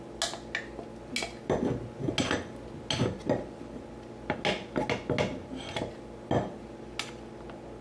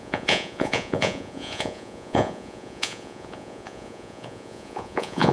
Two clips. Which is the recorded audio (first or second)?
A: first